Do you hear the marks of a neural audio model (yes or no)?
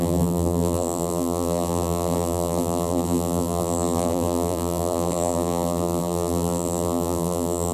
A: yes